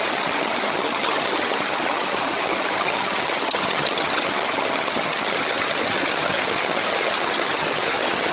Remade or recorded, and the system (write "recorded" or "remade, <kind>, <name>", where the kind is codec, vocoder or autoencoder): remade, vocoder, HiFi-GAN